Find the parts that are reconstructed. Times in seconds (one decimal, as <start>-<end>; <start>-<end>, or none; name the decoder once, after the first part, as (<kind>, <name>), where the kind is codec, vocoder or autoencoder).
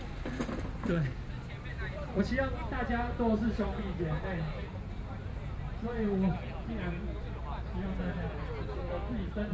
1.7-2.2 (vocoder, BigVGAN v2)